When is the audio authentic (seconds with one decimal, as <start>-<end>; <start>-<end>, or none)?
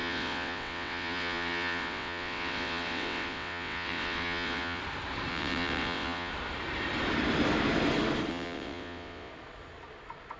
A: 4.8-5.3; 6.3-8.3; 9.3-10.4